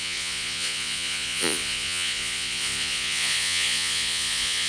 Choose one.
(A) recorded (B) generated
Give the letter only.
B